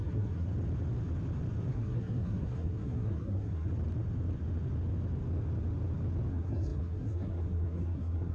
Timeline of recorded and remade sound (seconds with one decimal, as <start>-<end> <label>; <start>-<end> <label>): 0.0-0.5 remade; 0.5-1.7 recorded; 1.7-3.7 remade; 3.7-6.3 recorded; 6.3-8.3 remade

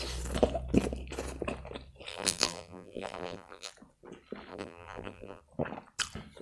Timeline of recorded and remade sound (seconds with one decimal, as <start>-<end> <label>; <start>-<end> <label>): 0.0-2.1 recorded; 2.1-3.7 remade; 3.7-4.5 recorded; 4.5-5.4 remade; 5.4-6.4 recorded

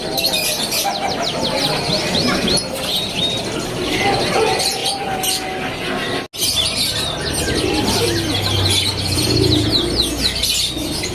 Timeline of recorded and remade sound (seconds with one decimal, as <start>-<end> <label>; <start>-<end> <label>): 0.0-11.1 recorded

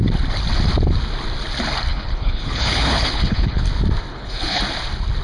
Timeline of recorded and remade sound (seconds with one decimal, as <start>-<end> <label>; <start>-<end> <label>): 0.0-1.9 recorded; 1.9-3.6 remade; 3.6-4.1 recorded; 4.1-4.6 remade; 4.6-5.2 recorded

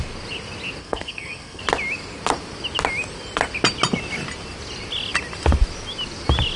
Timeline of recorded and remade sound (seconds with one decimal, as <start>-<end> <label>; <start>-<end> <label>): 0.0-0.8 recorded; 0.8-1.6 remade; 1.6-6.6 recorded

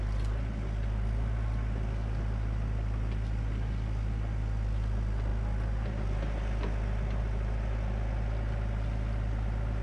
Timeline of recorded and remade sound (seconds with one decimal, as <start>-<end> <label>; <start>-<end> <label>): 0.0-9.8 recorded